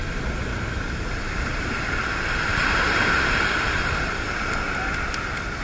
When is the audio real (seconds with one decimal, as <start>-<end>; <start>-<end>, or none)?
0.0-0.5; 3.8-5.6